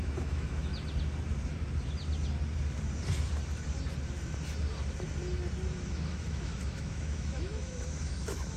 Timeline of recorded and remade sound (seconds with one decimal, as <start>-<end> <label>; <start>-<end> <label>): 0.0-0.7 remade; 0.7-5.7 recorded; 5.7-8.6 remade

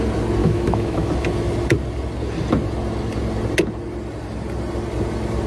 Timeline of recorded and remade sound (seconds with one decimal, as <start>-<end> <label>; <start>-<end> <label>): 0.0-0.4 recorded; 0.4-1.1 remade; 1.1-5.5 recorded

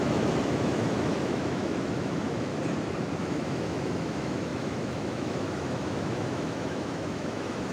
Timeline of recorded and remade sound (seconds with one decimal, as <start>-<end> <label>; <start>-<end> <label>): 0.0-2.5 remade; 2.5-3.2 recorded; 3.2-7.7 remade

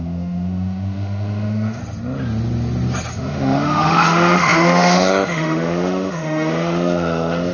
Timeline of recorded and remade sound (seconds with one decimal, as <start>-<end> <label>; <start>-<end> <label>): 0.0-1.8 remade; 1.8-3.1 recorded; 3.1-7.5 remade

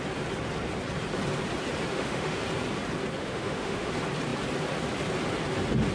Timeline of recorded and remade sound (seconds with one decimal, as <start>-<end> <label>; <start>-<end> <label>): 0.0-1.9 recorded; 1.9-2.4 remade; 2.4-3.2 recorded; 3.2-3.9 remade; 3.9-5.9 recorded

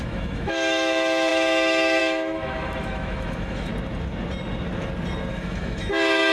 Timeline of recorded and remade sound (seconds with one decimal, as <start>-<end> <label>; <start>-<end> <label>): 0.0-3.7 remade; 3.7-5.3 recorded; 5.3-6.3 remade

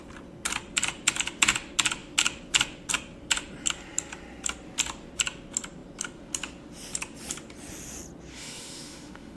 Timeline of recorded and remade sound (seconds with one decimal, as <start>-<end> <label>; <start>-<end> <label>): 0.0-8.3 recorded; 8.3-9.4 remade